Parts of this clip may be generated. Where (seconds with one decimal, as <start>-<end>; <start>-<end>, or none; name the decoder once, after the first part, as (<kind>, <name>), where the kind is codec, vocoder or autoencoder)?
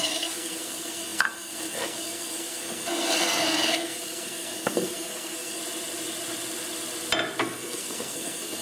0.0-5.6 (codec, SNAC); 7.4-8.6